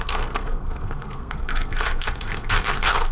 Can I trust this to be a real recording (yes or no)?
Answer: no